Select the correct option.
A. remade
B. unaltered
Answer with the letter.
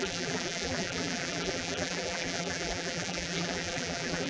A